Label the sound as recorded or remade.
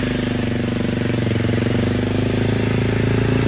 recorded